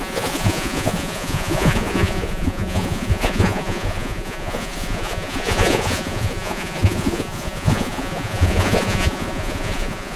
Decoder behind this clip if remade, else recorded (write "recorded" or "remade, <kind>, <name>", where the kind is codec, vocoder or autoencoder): remade, vocoder, Vocos